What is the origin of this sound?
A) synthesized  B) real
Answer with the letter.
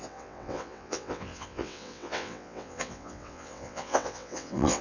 A